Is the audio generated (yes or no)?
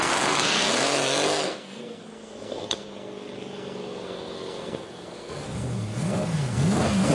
yes